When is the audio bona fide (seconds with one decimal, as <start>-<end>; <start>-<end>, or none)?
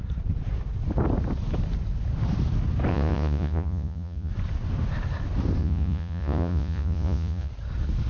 0.0-2.9; 4.3-5.6; 7.5-8.1